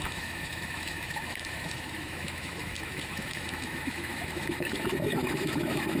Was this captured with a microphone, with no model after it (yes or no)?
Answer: no